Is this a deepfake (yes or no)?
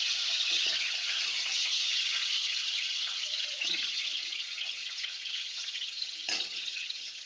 yes